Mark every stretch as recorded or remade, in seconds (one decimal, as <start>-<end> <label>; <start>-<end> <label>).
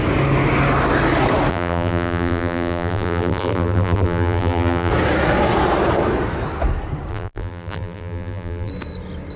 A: 0.0-1.5 recorded; 1.5-4.9 remade; 4.9-7.1 recorded; 7.1-8.7 remade; 8.7-9.4 recorded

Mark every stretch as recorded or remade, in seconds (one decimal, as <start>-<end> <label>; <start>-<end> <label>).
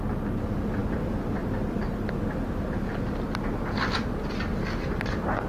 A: 0.0-5.5 recorded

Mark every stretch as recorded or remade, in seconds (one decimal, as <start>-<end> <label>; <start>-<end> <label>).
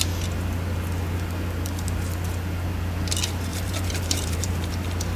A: 0.0-3.5 recorded; 3.5-4.7 remade; 4.7-5.2 recorded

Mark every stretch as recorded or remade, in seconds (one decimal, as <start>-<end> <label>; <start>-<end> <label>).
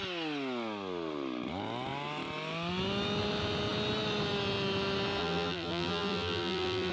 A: 0.0-5.2 recorded; 5.2-6.9 remade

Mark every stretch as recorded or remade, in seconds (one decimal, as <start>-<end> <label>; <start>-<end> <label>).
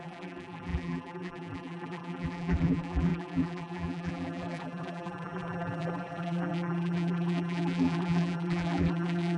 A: 0.0-9.4 remade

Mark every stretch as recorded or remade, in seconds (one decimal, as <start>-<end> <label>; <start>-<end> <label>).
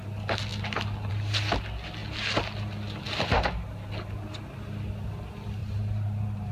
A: 0.0-5.6 recorded; 5.6-6.5 remade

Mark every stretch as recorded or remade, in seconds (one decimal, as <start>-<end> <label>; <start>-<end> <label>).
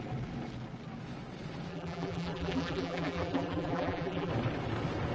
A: 0.0-1.7 recorded; 1.7-4.3 remade; 4.3-5.1 recorded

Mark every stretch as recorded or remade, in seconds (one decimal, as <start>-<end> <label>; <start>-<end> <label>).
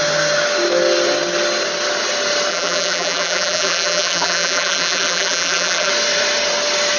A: 0.0-2.5 recorded; 2.5-5.9 remade; 5.9-7.0 recorded